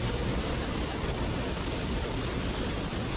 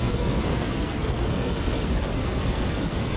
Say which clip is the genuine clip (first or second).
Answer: first